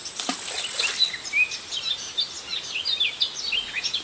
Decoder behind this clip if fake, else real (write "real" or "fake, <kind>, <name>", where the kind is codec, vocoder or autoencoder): real